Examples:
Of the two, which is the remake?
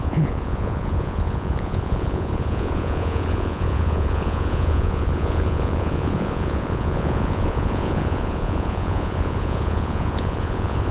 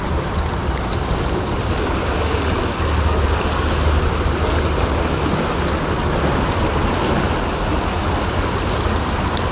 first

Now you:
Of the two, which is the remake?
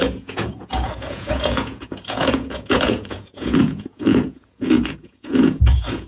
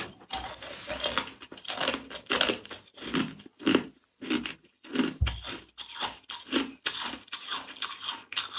first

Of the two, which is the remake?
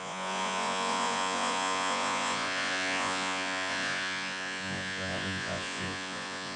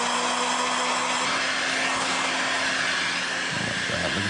first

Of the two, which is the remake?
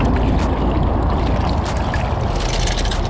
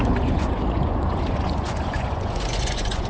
second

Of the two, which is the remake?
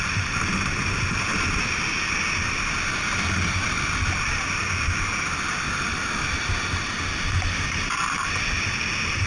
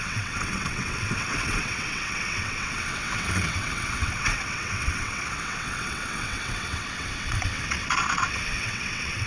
second